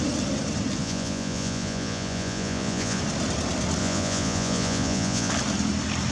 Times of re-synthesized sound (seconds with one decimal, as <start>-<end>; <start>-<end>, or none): 0.8-3.0; 3.8-5.3